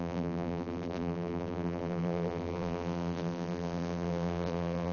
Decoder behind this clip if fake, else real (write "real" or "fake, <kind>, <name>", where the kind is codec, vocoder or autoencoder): fake, vocoder, BigVGAN v2